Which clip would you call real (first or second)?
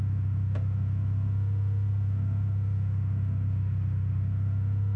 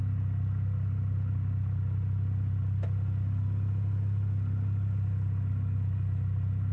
second